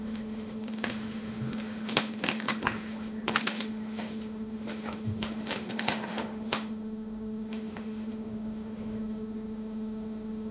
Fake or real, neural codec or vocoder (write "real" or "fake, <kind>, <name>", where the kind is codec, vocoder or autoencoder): fake, autoencoder, DAC-VAE